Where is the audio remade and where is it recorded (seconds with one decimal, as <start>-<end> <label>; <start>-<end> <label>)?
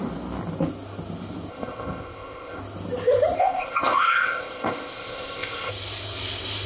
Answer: 0.0-1.5 recorded; 1.5-2.6 remade; 2.6-3.4 recorded; 3.4-5.7 remade; 5.7-6.7 recorded